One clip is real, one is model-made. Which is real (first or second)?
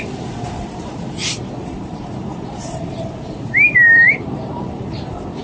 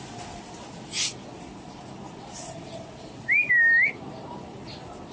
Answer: second